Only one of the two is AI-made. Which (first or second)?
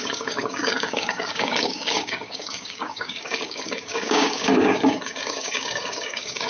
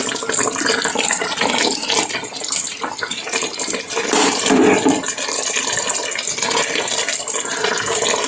first